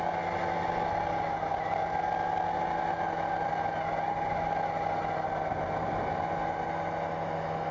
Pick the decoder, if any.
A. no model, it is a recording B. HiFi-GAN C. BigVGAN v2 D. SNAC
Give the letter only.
A